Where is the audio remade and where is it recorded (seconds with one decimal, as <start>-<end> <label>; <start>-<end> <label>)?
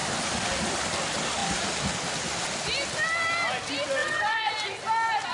0.0-4.0 recorded; 4.0-4.5 remade; 4.5-5.3 recorded